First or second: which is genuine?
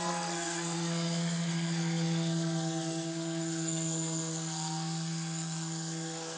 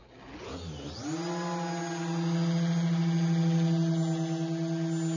second